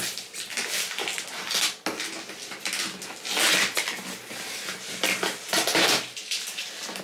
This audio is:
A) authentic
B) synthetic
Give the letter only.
A